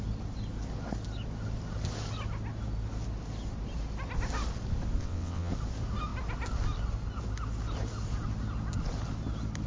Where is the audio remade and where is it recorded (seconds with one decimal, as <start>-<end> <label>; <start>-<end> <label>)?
0.0-5.0 recorded; 5.0-5.5 remade; 5.5-9.7 recorded